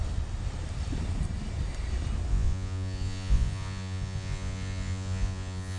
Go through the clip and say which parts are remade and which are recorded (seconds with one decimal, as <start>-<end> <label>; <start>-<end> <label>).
0.0-2.3 recorded; 2.3-5.8 remade